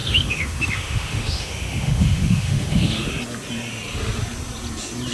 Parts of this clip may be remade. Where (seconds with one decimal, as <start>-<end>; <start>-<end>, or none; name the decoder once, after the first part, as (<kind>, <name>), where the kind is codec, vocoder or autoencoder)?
0.0-3.1 (autoencoder, DAC-VAE)